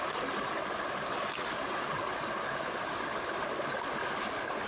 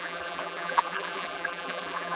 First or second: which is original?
first